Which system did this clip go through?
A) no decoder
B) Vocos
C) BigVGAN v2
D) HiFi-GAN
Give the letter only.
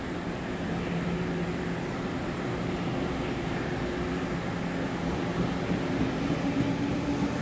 A